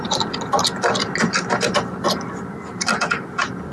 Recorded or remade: recorded